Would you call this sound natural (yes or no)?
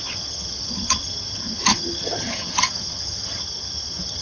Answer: no